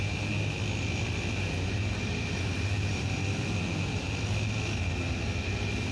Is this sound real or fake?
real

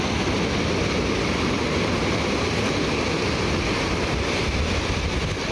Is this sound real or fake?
real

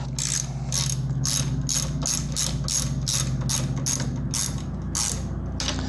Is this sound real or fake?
real